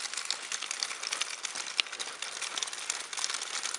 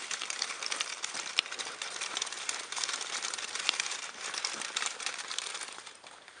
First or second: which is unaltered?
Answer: first